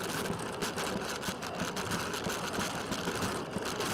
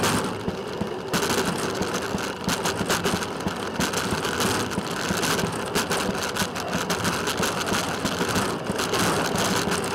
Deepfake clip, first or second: first